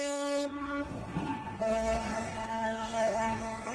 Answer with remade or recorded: remade